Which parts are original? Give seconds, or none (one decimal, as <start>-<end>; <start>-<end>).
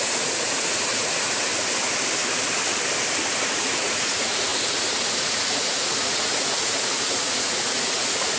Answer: 1.5-3.5